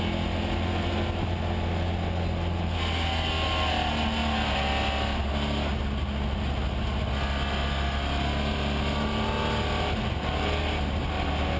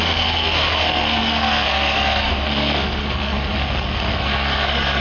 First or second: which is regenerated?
second